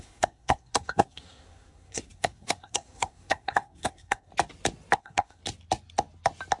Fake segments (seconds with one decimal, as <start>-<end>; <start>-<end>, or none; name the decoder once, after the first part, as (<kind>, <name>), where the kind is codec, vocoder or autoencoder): 0.0-4.3 (codec, SNAC); 5.0-5.4